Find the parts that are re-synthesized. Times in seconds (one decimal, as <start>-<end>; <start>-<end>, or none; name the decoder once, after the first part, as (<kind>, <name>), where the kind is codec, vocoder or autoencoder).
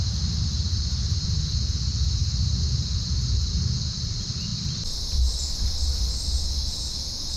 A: none